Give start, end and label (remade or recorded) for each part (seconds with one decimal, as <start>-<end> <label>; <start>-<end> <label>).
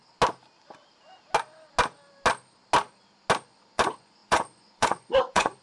0.0-3.4 recorded; 3.4-5.6 remade